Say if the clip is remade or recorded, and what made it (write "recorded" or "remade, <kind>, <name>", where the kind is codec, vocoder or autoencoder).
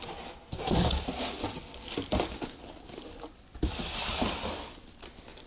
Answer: recorded